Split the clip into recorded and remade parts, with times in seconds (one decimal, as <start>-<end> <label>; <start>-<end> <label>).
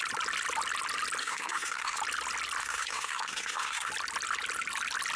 0.0-1.2 recorded; 1.2-2.0 remade; 2.0-2.6 recorded; 2.6-3.9 remade; 3.9-5.2 recorded